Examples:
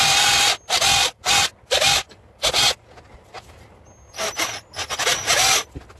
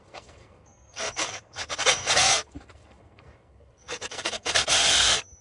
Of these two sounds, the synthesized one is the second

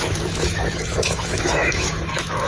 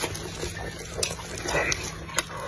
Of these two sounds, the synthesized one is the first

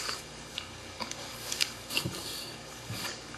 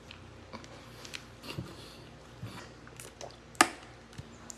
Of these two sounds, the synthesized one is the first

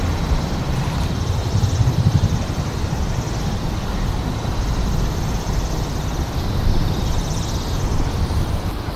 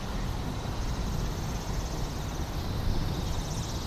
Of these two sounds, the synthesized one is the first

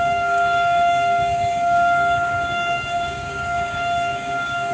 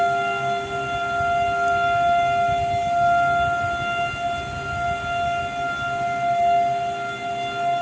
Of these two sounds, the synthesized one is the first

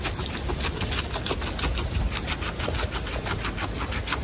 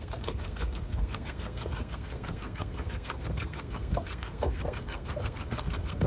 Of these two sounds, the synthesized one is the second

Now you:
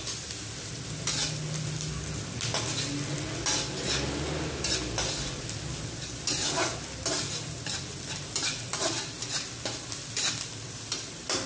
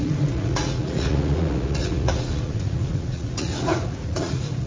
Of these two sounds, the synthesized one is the second